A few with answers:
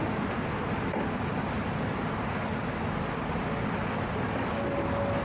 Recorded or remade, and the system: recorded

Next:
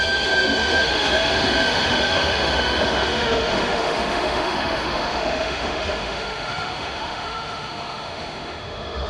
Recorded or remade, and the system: remade, autoencoder, DAC-VAE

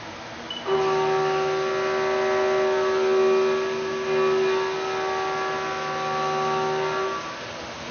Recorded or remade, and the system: recorded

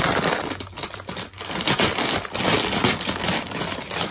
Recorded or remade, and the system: recorded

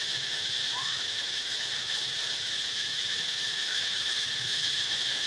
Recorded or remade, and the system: remade, autoencoder, DAC-VAE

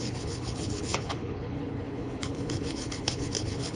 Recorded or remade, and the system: remade, codec, HILCodec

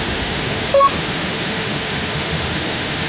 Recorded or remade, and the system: remade, autoencoder, DAC-VAE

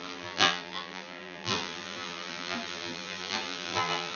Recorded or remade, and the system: remade, vocoder, BigVGAN v2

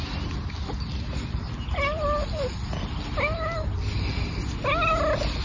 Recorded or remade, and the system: recorded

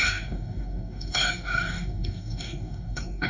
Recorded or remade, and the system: remade, codec, DAC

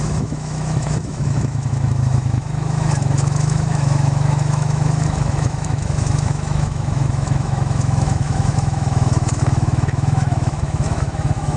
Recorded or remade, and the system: remade, autoencoder, DAC-VAE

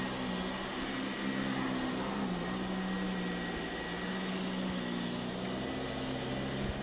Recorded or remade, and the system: recorded